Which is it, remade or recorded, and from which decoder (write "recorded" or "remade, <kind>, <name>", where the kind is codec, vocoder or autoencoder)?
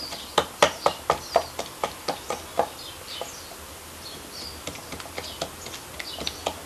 recorded